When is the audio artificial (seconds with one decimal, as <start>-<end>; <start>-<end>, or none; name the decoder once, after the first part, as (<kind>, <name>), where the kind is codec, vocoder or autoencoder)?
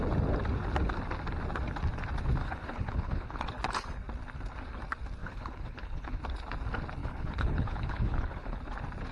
2.4-3.4 (codec, HILCodec); 5.2-6.2; 7.0-8.6